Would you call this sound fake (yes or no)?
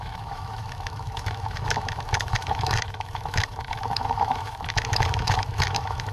yes